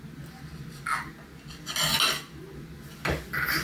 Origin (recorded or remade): recorded